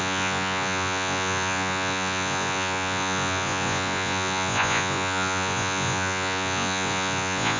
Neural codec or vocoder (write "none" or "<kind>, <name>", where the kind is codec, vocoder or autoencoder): vocoder, Vocos